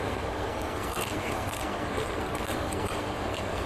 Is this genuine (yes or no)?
no